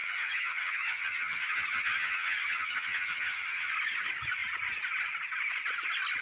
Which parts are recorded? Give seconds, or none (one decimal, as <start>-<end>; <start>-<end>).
3.7-6.2